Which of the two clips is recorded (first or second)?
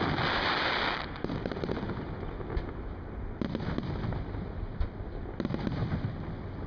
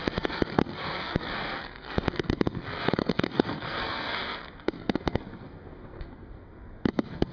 first